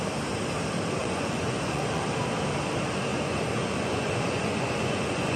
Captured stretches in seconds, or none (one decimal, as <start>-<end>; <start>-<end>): 0.0-1.0; 2.0-3.1